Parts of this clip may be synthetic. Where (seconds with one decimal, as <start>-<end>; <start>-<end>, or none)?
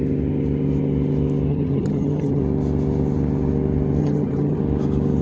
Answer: 1.5-2.4; 4.0-4.6